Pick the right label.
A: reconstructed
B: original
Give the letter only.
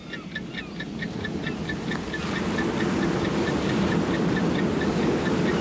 B